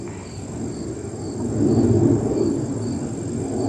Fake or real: real